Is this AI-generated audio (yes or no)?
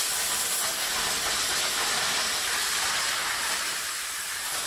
no